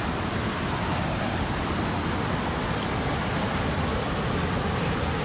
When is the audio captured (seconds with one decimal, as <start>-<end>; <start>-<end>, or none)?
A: 0.0-5.2